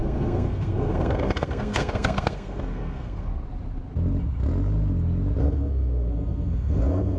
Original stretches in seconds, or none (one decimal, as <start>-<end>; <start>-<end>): 3.3-5.4